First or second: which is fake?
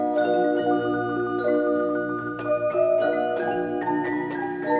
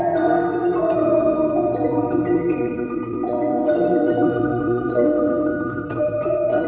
second